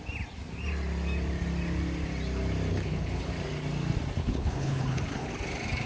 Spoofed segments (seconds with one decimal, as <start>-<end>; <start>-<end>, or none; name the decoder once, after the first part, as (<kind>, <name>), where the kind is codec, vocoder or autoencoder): 2.7-3.3 (codec, HILCodec); 4.2-5.3